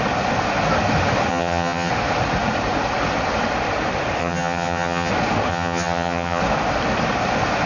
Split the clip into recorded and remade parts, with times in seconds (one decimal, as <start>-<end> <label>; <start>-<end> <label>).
0.0-1.3 recorded; 1.3-1.9 remade; 1.9-4.2 recorded; 4.2-5.1 remade; 5.1-5.5 recorded; 5.5-6.4 remade; 6.4-7.7 recorded